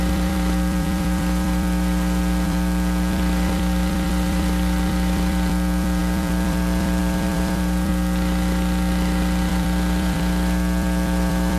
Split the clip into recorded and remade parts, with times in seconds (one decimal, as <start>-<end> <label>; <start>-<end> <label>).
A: 0.0-7.9 remade; 7.9-9.5 recorded; 9.5-11.6 remade